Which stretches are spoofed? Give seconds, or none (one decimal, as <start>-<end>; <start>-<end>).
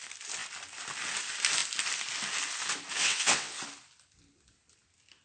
3.0-3.6